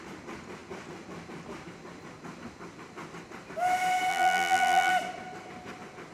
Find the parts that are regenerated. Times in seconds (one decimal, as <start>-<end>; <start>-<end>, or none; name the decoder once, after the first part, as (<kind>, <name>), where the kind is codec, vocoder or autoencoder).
4.1-4.9 (vocoder, BigVGAN v2)

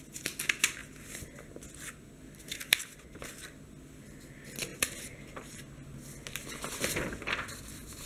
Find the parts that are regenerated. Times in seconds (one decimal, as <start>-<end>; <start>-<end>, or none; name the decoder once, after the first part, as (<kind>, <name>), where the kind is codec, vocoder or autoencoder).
none

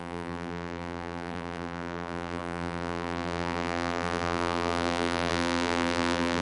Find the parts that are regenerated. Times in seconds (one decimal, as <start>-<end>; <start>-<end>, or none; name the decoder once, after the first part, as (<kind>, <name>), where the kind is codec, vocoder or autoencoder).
0.0-6.4 (vocoder, BigVGAN v2)

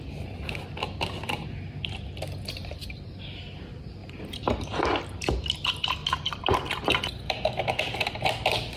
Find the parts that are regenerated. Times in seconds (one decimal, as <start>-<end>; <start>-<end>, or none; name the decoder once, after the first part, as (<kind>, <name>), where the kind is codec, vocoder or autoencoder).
2.6-3.2 (vocoder, BigVGAN v2); 4.0-4.8; 6.0-7.0

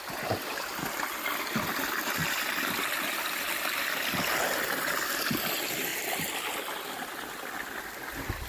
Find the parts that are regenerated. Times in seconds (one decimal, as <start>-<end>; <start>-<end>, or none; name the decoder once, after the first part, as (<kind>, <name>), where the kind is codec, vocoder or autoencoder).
2.2-5.5 (vocoder, BigVGAN v2); 5.9-6.4

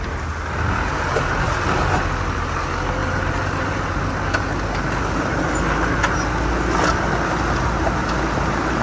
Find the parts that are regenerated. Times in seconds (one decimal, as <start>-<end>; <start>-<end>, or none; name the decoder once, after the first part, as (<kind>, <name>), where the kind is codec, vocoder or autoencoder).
3.0-3.8 (vocoder, BigVGAN v2)

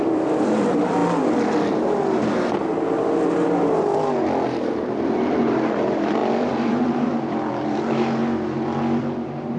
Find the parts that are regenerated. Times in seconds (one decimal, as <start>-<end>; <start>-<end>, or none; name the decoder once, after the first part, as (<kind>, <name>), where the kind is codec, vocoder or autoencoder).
0.0-1.0 (vocoder, BigVGAN v2); 5.6-8.2; 9.0-9.6

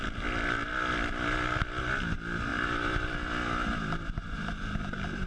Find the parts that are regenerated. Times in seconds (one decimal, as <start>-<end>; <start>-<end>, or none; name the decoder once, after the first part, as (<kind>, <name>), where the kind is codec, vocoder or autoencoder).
2.5-5.3 (vocoder, BigVGAN v2)